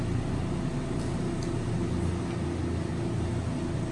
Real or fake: real